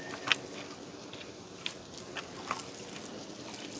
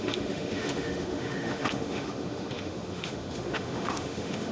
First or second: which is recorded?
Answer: first